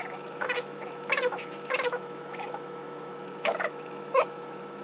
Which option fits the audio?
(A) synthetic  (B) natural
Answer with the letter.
A